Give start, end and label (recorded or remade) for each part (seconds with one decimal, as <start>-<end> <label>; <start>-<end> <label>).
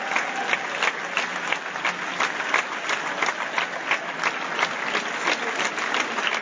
0.0-6.4 recorded